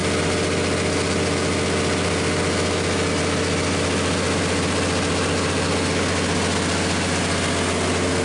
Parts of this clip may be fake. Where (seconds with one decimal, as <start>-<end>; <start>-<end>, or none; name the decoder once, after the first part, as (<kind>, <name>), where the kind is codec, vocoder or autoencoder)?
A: none